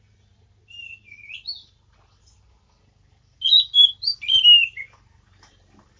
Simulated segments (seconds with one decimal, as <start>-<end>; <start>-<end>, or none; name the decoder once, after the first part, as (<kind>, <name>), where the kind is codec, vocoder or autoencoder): none